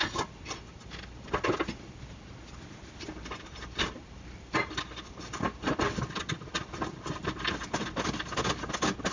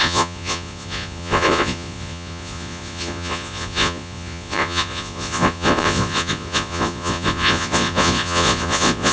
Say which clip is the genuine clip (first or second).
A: first